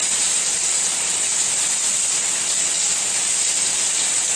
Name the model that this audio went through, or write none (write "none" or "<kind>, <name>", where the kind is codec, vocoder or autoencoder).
none